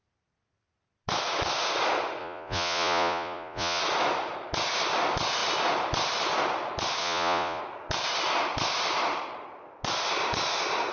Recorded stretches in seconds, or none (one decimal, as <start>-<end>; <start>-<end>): 0.0-2.2; 3.8-7.0; 7.6-10.9